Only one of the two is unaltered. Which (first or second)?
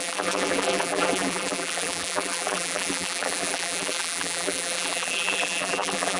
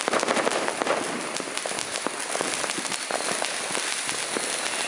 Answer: second